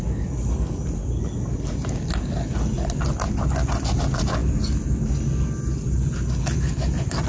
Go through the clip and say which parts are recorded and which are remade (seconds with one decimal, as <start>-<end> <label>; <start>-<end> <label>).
0.0-7.3 recorded